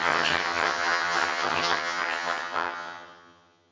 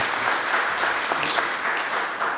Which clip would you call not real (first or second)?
first